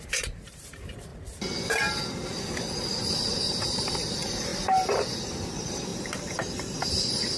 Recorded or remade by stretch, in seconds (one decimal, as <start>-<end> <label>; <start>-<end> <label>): 0.0-1.1 remade; 1.1-2.8 recorded; 2.8-4.5 remade; 4.5-5.5 recorded; 5.5-7.4 remade